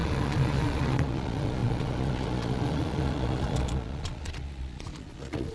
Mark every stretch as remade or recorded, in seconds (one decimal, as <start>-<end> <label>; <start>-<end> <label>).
0.0-5.5 remade